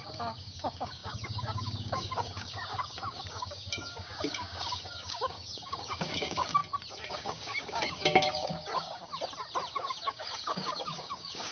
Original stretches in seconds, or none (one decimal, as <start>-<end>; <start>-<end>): 6.6-7.1; 9.1-9.7